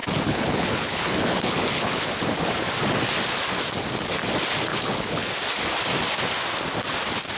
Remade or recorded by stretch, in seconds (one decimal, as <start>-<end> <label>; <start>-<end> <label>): 0.0-2.0 remade; 2.0-4.7 recorded; 4.7-5.3 remade; 5.3-7.4 recorded